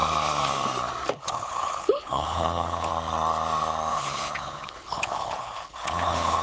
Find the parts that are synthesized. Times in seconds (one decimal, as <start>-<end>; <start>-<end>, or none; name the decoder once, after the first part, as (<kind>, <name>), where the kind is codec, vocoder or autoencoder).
1.1-2.9 (codec, HILCodec); 3.9-6.4